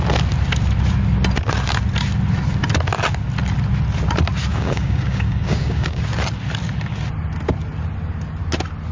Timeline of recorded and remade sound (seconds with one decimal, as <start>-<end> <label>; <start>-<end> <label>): 0.0-4.5 recorded; 4.5-6.0 remade; 6.0-8.9 recorded